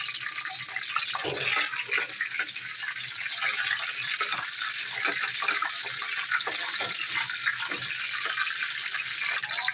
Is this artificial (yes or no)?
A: no